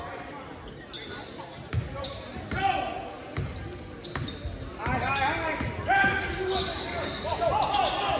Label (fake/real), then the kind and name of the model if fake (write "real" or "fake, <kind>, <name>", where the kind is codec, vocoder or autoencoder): real